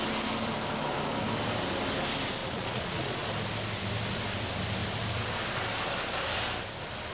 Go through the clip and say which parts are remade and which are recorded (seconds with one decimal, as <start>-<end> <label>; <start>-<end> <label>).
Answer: 0.0-2.4 recorded; 2.4-3.3 remade; 3.3-7.1 recorded